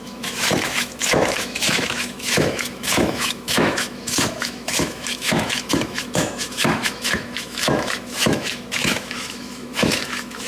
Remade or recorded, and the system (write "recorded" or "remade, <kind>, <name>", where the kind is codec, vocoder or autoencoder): remade, autoencoder, DAC-VAE